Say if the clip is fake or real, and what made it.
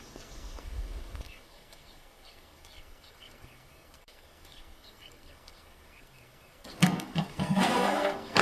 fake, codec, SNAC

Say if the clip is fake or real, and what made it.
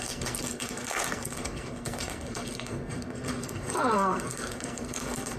fake, codec, SNAC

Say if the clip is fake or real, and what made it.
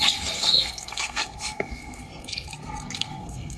fake, codec, SNAC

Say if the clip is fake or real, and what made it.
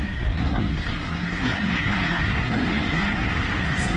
fake, codec, SNAC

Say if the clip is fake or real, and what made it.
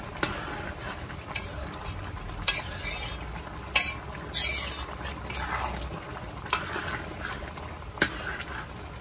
real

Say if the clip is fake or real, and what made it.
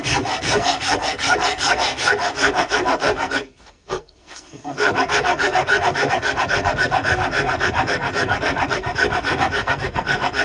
fake, codec, SNAC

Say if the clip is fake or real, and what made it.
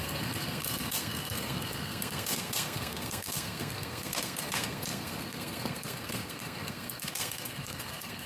fake, codec, SNAC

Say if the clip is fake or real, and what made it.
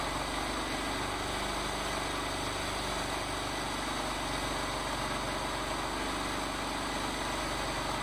real